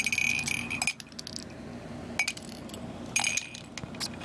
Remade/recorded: recorded